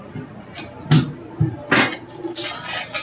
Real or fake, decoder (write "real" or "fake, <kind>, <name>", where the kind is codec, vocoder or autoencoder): real